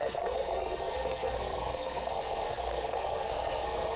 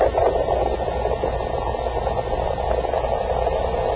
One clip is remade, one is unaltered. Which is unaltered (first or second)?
second